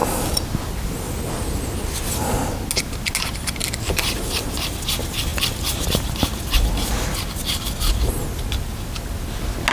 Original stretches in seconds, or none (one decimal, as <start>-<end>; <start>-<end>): 0.0-9.7